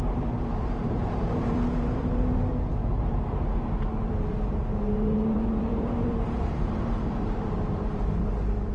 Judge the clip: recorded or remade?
remade